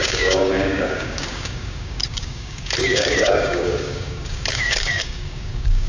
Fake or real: fake